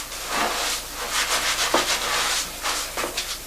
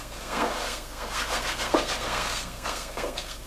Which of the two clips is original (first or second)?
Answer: first